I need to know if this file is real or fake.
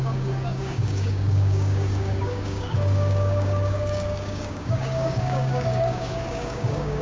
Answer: fake